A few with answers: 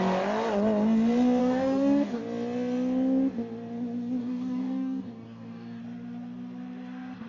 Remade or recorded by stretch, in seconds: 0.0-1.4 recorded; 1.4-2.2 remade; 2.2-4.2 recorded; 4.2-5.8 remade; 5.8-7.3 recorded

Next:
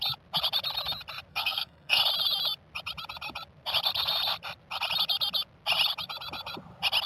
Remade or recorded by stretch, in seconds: 0.0-1.3 recorded; 1.3-2.0 remade; 2.0-7.1 recorded

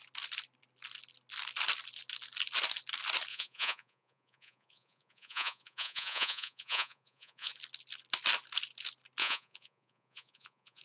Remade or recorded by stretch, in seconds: 0.0-3.3 recorded; 3.3-7.5 remade; 7.5-9.2 recorded; 9.2-10.8 remade